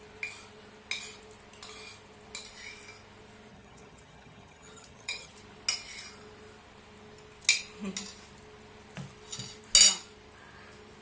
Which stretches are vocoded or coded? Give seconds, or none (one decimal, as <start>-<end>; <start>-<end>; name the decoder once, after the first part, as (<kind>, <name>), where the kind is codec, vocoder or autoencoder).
3.5-5.3 (vocoder, HiFi-GAN)